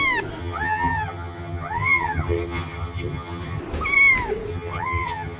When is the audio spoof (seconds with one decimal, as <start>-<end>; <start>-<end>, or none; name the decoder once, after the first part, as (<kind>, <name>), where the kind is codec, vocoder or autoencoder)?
0.4-3.6 (vocoder, HiFi-GAN); 4.5-5.4